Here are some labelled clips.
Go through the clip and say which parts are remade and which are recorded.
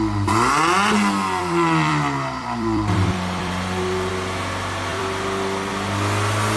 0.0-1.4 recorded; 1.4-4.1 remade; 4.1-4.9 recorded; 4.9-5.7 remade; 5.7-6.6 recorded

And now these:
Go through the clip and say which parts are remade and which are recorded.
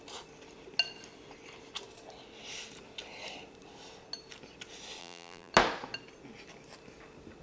0.0-5.0 recorded; 5.0-5.5 remade; 5.5-7.4 recorded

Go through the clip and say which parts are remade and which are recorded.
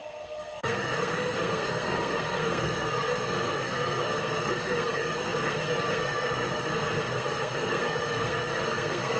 0.0-9.2 remade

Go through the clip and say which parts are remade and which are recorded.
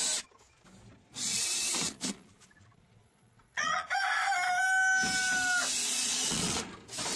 0.0-1.3 recorded; 1.3-3.9 remade; 3.9-5.8 recorded; 5.8-6.6 remade; 6.6-7.2 recorded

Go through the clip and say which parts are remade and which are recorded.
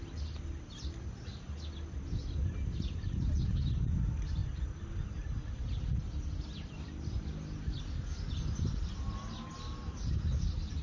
0.0-10.8 recorded